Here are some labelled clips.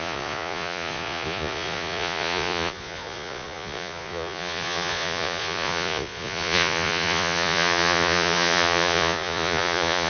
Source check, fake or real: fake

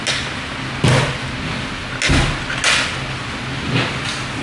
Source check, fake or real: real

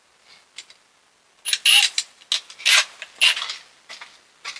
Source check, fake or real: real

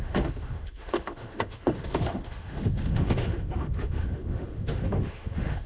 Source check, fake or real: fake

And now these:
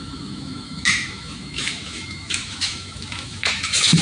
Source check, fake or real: fake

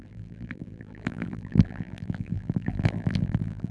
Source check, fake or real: fake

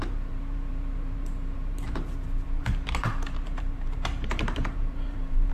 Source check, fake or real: fake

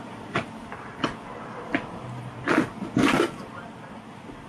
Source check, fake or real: real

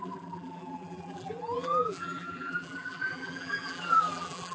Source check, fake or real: fake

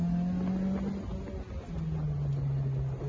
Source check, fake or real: real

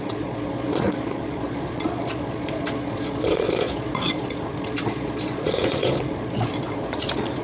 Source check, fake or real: fake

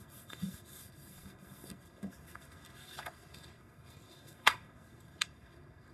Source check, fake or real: fake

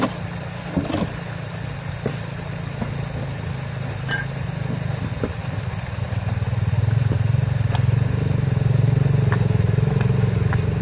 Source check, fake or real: real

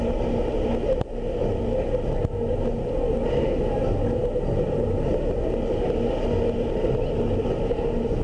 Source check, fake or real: real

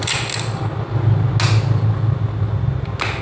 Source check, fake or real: real